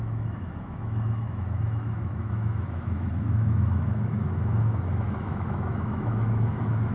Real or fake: fake